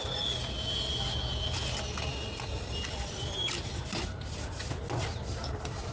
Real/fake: real